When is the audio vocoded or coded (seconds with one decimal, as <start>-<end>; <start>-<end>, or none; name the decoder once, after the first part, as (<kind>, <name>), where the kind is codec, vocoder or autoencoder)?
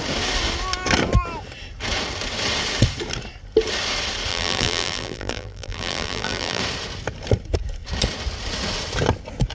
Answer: 4.3-6.6 (vocoder, BigVGAN v2)